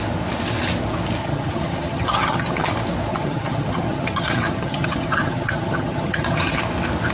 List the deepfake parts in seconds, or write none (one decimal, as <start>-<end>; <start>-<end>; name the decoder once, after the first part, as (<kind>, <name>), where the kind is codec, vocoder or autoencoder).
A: 1.2-2.7 (vocoder, HiFi-GAN); 3.1-6.6